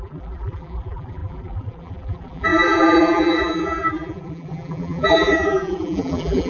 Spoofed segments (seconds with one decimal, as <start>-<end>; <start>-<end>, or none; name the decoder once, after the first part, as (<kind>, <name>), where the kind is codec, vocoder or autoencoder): 0.0-6.5 (vocoder, BigVGAN v2)